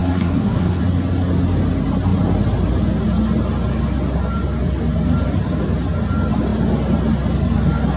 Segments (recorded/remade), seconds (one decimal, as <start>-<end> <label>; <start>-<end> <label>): 0.0-0.8 remade; 0.8-8.0 recorded